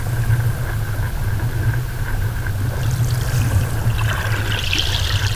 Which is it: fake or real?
real